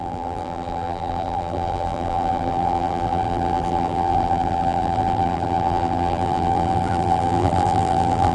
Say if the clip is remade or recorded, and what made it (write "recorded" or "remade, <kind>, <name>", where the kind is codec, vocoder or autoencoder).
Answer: remade, vocoder, BigVGAN v2